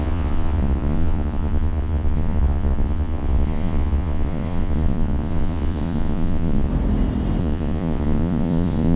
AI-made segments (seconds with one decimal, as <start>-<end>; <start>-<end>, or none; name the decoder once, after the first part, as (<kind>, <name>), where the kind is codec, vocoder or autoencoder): 0.0-6.7 (vocoder, Vocos); 7.4-9.0